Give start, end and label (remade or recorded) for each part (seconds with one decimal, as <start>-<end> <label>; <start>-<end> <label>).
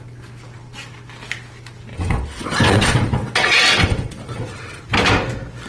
0.0-1.9 recorded; 1.9-4.8 remade; 4.8-5.7 recorded